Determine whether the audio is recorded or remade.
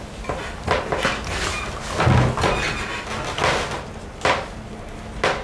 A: recorded